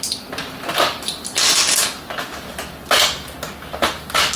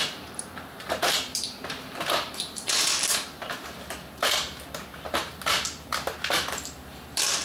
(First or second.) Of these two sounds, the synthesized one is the second